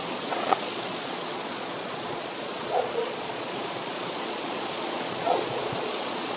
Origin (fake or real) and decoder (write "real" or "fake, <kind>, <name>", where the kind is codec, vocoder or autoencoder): fake, vocoder, Vocos